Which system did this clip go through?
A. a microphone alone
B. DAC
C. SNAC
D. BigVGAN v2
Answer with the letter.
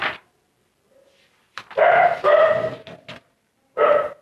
A